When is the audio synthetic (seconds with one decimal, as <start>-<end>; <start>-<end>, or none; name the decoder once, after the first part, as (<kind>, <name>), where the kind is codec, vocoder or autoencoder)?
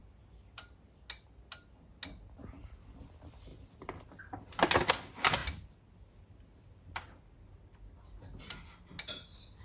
none